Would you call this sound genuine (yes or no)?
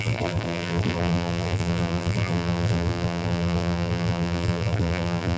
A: no